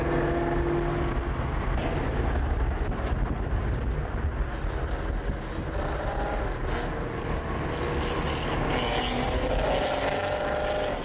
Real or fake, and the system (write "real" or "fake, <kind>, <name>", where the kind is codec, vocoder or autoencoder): real